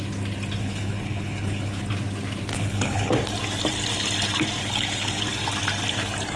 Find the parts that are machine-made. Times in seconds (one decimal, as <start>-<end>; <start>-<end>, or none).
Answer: 0.6-1.8; 2.5-3.1; 4.6-5.2